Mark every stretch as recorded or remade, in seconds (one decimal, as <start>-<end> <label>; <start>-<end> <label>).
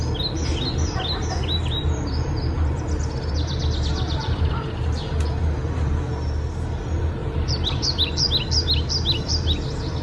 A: 0.0-3.9 recorded; 3.9-4.5 remade; 4.5-7.2 recorded; 7.2-8.3 remade; 8.3-10.0 recorded